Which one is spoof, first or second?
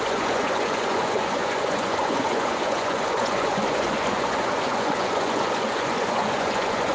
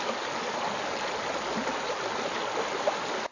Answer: first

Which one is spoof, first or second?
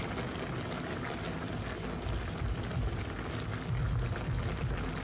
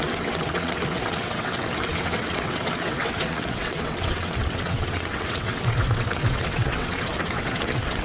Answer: second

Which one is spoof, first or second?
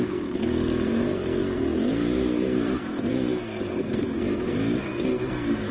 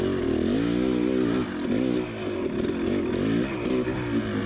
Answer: first